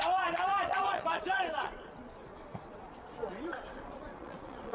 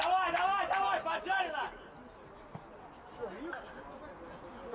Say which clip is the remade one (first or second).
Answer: first